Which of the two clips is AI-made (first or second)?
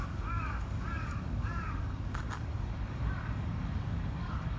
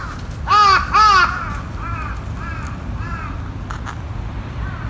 first